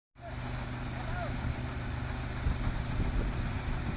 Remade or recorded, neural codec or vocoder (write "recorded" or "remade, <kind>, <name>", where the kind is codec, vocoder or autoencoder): recorded